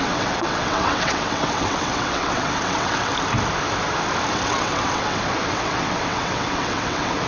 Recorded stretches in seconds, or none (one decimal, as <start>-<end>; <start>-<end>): 3.1-4.3